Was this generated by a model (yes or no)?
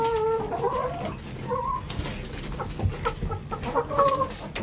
no